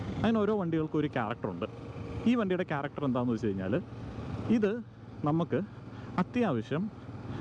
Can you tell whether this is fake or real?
real